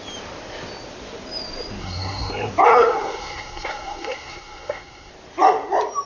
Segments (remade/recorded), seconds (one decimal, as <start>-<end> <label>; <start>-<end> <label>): 0.0-1.8 recorded; 1.8-2.3 remade; 2.3-2.7 recorded; 2.7-5.1 remade; 5.1-6.1 recorded